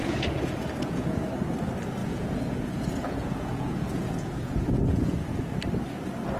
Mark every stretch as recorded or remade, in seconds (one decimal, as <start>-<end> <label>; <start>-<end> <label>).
0.0-1.3 remade; 1.3-2.0 recorded; 2.0-5.4 remade; 5.4-6.4 recorded